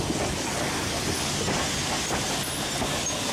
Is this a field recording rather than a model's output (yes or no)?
yes